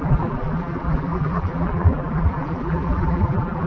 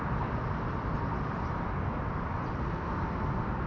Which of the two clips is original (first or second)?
second